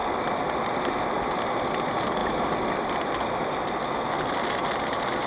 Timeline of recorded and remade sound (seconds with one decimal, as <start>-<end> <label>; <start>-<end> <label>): 0.0-5.3 recorded